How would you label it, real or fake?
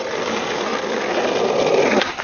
real